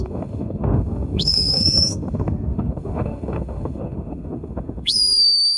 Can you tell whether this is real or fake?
fake